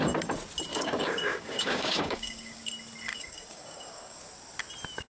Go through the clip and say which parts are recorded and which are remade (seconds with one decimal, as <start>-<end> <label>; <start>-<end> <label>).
0.0-0.7 recorded; 0.7-2.6 remade; 2.6-3.1 recorded; 3.1-4.2 remade; 4.2-5.1 recorded